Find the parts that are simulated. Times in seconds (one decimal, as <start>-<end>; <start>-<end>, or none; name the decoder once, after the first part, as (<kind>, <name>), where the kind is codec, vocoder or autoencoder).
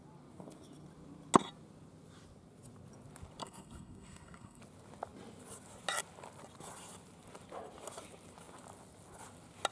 3.4-4.6 (codec, SNAC)